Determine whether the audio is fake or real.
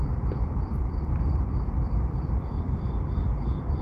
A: fake